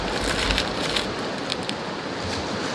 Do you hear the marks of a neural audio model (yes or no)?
no